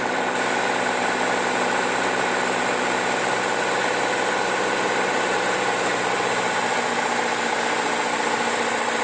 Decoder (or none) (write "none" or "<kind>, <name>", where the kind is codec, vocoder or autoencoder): none